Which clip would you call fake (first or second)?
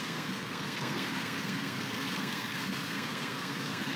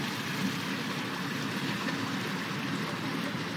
first